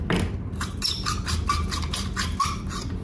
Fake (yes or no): no